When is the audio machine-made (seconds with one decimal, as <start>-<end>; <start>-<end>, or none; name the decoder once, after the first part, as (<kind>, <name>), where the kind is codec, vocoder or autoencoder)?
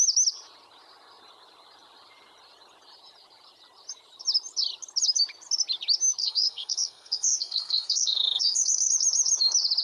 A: 6.2-8.9 (codec, SNAC)